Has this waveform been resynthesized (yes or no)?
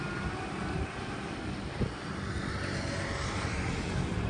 no